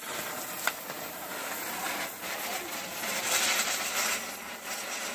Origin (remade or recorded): recorded